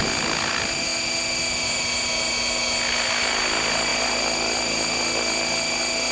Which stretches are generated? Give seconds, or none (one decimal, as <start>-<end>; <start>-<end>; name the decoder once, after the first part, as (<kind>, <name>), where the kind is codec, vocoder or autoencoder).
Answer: none